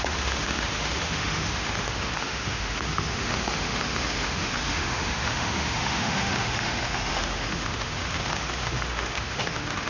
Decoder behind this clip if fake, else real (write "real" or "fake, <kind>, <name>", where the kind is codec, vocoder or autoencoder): fake, autoencoder, DAC-VAE